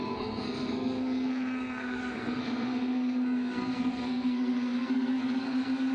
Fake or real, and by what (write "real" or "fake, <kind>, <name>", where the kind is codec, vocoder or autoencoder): fake, codec, SNAC